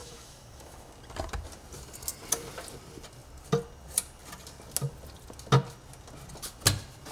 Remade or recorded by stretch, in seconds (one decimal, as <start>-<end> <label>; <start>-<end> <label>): 0.0-0.9 remade; 0.9-7.1 recorded